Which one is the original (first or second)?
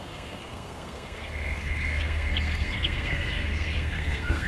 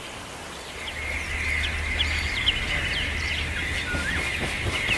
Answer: second